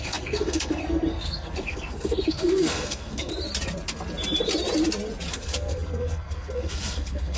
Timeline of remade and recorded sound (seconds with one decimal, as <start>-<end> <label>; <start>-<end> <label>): 0.0-3.3 remade; 3.3-5.3 recorded; 5.3-7.4 remade